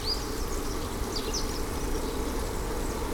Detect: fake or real real